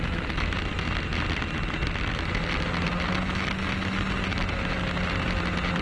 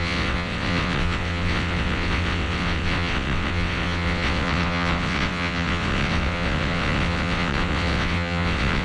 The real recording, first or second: first